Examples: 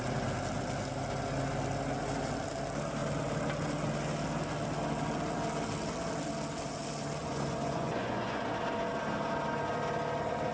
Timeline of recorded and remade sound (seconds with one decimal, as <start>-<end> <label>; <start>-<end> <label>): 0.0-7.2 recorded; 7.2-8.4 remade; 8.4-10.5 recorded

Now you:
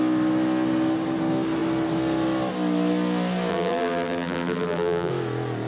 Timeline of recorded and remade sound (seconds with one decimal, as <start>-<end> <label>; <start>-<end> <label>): 0.0-3.5 recorded; 3.5-5.1 remade; 5.1-5.7 recorded

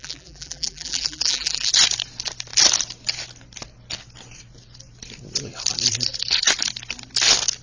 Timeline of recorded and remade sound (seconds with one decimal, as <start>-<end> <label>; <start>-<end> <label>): 0.0-1.7 remade; 1.7-7.6 recorded